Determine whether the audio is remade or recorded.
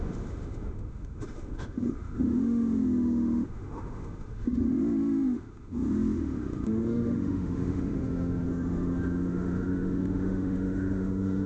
remade